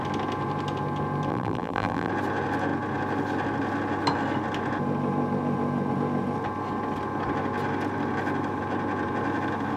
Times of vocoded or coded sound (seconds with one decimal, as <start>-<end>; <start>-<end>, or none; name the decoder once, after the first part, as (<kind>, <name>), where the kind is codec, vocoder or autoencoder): 1.3-2.1 (vocoder, BigVGAN v2)